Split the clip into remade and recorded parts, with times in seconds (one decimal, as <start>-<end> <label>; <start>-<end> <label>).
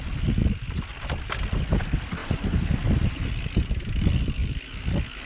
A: 0.0-5.3 recorded